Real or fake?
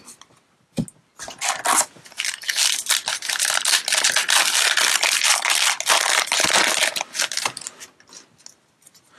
real